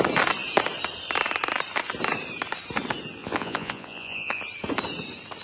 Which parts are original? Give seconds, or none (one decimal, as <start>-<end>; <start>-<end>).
0.0-3.2; 4.4-5.4